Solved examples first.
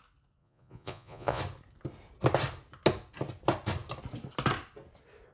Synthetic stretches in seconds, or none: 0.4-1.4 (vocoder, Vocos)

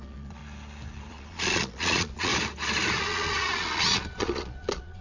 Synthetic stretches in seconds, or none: 0.0-0.4 (vocoder, Vocos); 1.1-2.3; 3.0-5.0